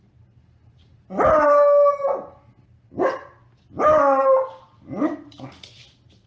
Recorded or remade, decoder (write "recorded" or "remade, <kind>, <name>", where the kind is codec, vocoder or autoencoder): recorded